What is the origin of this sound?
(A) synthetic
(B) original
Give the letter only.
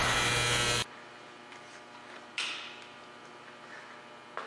B